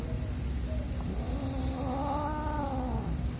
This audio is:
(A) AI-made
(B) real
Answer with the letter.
B